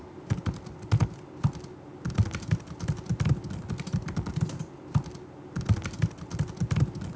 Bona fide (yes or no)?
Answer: yes